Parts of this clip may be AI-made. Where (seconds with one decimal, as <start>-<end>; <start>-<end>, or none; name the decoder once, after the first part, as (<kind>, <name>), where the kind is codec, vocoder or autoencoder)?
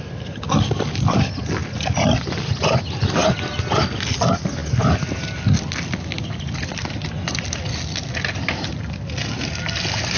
none